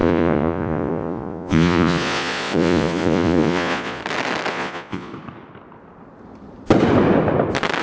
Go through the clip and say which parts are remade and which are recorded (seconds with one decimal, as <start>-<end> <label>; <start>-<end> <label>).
0.0-4.0 remade; 4.0-4.5 recorded; 4.5-5.1 remade; 5.1-7.8 recorded